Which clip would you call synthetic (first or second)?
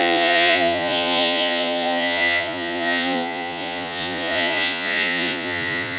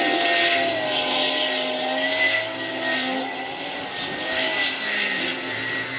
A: first